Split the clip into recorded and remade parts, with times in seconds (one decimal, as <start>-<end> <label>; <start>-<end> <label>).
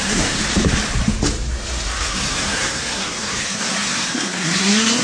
0.0-0.4 remade; 0.4-2.0 recorded; 2.0-5.0 remade